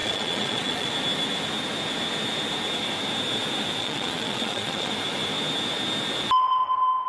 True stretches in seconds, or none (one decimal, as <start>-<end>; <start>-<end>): 0.9-3.8; 4.9-7.1

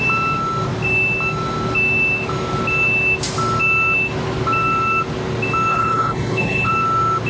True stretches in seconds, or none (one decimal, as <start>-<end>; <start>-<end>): 0.0-5.7; 6.7-7.3

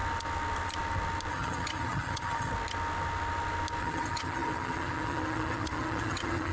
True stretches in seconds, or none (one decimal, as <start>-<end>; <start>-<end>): 0.0-1.3; 2.5-3.8

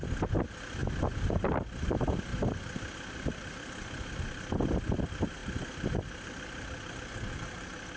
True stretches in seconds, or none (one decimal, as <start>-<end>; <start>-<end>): 0.0-8.0

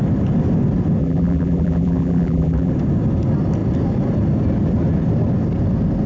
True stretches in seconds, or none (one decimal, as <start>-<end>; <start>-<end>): 0.0-1.0; 2.7-6.1

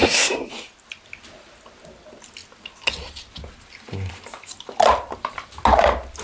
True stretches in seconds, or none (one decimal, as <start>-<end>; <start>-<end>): 0.5-6.2

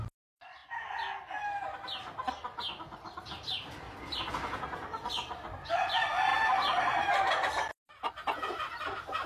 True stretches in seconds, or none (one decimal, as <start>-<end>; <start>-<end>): 0.0-6.3; 7.3-9.3

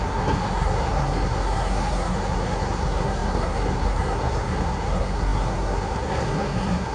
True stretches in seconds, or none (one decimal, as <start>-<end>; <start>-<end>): none